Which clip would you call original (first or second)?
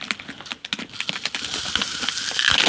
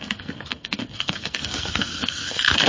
first